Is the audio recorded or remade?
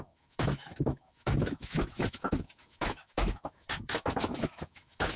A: remade